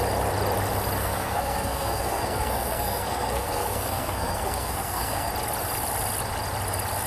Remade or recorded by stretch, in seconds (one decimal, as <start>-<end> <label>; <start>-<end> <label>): 0.0-1.0 recorded; 1.0-5.3 remade; 5.3-7.1 recorded